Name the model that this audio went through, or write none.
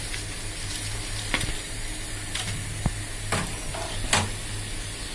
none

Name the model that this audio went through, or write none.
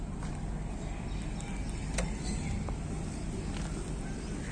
none